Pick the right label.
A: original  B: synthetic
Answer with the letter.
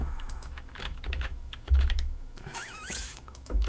B